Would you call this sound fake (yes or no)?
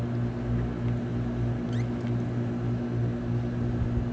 no